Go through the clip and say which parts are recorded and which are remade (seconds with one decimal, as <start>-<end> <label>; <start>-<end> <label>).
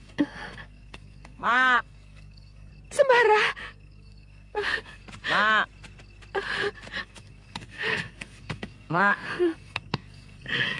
0.0-2.7 remade; 2.7-3.6 recorded; 3.6-5.0 remade; 5.0-7.0 recorded; 7.0-10.8 remade